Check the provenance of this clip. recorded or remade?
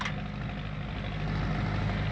recorded